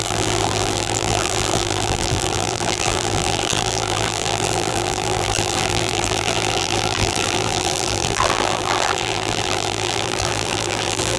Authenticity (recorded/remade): remade